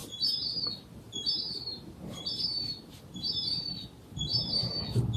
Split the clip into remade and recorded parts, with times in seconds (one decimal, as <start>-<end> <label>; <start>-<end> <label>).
0.0-1.2 recorded; 1.2-3.6 remade; 3.6-4.3 recorded; 4.3-4.8 remade; 4.8-5.2 recorded

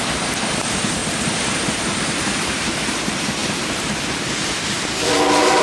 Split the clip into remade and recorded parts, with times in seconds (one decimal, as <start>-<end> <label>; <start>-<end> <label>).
0.0-5.6 remade